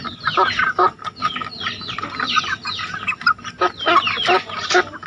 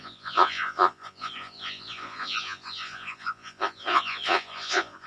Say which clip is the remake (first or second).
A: second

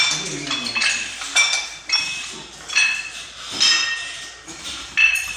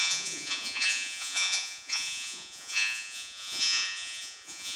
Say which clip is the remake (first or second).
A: second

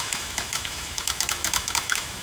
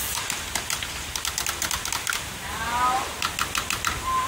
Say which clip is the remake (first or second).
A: first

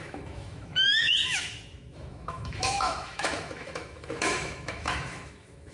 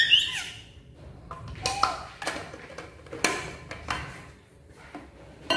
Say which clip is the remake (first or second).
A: first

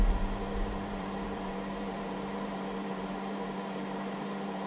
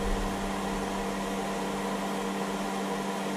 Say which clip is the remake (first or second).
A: first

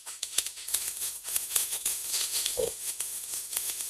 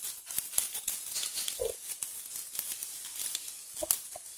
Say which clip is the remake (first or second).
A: first